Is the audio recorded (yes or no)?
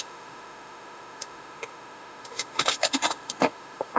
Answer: no